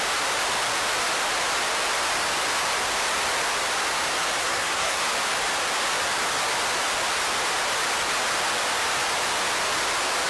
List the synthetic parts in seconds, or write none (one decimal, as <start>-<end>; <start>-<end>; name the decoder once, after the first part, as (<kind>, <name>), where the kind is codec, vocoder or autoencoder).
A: 4.4-5.0 (codec, SNAC)